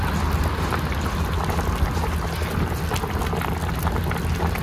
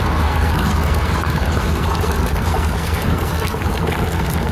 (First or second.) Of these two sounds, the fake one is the second